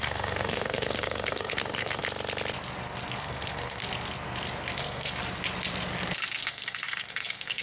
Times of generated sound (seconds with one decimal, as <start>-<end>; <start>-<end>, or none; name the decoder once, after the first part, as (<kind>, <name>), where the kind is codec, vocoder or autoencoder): 0.0-2.0 (codec, SNAC); 3.1-3.8; 4.8-5.2; 6.5-7.6